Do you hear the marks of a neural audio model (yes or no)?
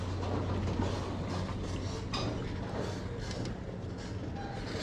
no